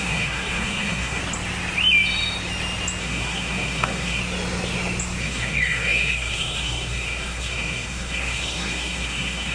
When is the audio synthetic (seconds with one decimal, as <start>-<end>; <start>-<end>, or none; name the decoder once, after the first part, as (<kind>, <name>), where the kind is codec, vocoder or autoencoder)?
0.0-1.2 (codec, SNAC); 3.0-4.2; 5.2-9.5